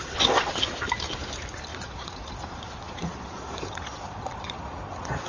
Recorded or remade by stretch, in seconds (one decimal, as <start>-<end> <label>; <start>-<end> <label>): 0.0-0.5 remade; 0.5-1.7 recorded; 1.7-5.3 remade